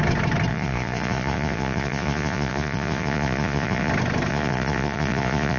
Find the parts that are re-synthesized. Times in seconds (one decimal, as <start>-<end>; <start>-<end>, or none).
0.5-3.9; 4.3-5.6